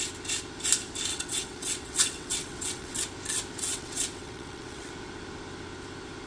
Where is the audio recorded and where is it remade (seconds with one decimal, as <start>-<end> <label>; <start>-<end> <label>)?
0.0-1.1 recorded; 1.1-3.0 remade; 3.0-3.7 recorded; 3.7-4.9 remade; 4.9-6.3 recorded